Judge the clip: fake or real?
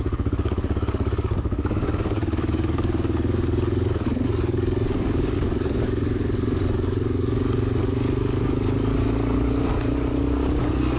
fake